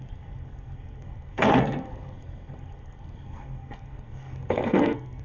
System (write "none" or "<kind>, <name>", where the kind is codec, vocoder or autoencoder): codec, SNAC